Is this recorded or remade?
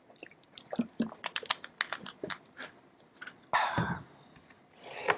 recorded